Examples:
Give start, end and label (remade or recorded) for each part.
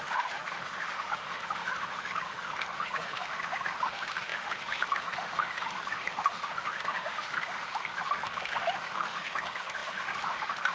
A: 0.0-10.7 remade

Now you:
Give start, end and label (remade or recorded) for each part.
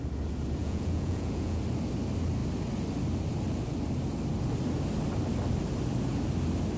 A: 0.0-0.6 recorded; 0.6-1.6 remade; 1.6-6.8 recorded